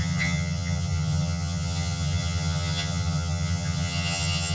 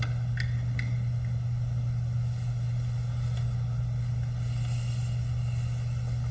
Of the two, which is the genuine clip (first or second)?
second